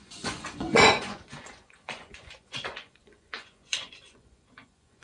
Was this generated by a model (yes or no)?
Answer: yes